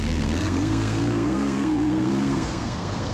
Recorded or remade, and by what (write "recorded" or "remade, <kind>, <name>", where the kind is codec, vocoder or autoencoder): remade, codec, SNAC